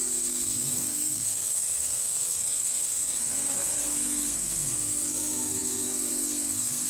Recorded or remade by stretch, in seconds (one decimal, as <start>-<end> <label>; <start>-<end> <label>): 0.0-6.9 remade